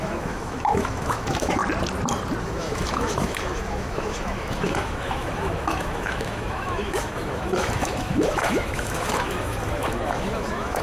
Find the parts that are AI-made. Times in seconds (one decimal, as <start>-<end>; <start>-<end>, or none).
0.0-1.6; 2.4-10.8